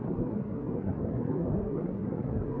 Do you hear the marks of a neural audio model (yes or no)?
yes